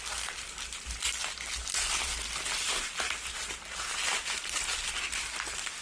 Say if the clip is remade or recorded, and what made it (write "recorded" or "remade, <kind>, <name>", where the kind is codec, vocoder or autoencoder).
recorded